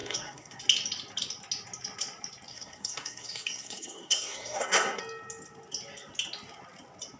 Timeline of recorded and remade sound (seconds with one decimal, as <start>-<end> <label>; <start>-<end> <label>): 0.0-0.6 remade; 0.6-2.5 recorded; 2.5-5.0 remade; 5.0-7.2 recorded